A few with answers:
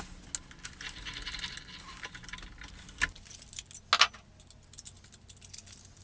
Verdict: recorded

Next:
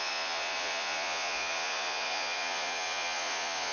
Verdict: remade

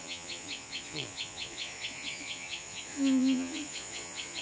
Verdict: remade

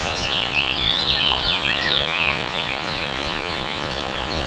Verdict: remade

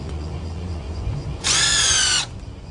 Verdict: remade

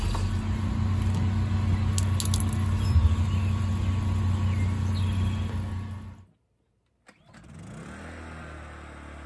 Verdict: recorded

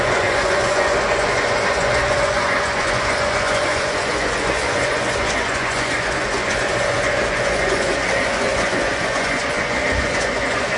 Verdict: remade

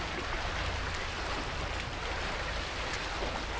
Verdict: recorded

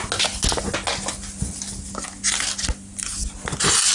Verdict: recorded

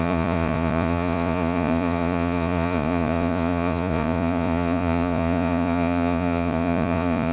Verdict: remade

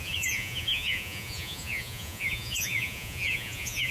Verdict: remade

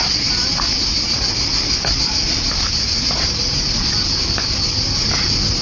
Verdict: recorded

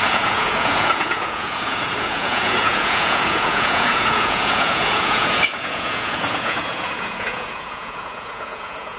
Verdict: remade